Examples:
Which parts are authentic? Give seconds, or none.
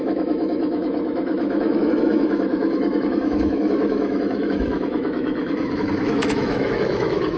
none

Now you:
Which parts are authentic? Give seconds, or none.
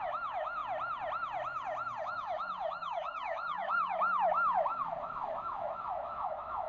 0.6-2.0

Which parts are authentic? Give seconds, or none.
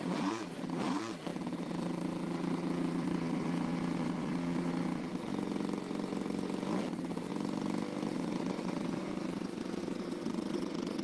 5.3-6.8; 7.3-8.1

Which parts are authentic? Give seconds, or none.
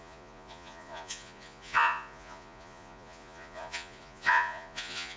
none